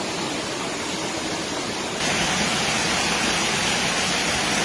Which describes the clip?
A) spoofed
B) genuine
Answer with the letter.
B